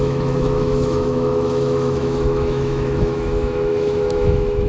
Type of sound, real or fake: fake